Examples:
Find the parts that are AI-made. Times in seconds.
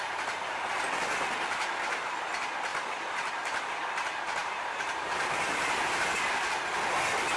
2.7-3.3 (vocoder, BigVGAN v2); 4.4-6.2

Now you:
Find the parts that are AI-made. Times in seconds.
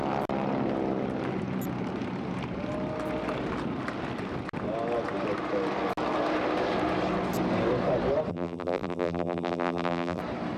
8.3-10.2 (vocoder, BigVGAN v2)